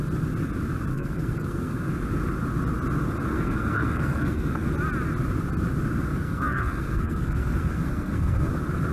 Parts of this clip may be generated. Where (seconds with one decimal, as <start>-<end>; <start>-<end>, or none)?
0.9-1.9; 3.3-4.7; 6.1-8.5